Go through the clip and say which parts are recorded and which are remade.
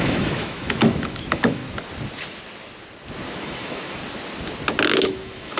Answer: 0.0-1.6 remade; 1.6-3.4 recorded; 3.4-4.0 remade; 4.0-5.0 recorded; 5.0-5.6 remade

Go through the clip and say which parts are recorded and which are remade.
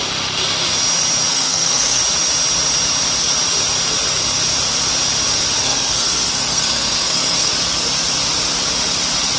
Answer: 0.0-1.3 recorded; 1.3-2.0 remade; 2.0-5.6 recorded; 5.6-7.5 remade; 7.5-9.4 recorded